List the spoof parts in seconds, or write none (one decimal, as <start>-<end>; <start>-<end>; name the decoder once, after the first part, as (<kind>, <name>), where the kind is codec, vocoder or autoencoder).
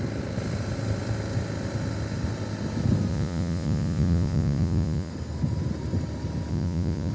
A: 3.1-5.1 (vocoder, Vocos); 6.5-7.1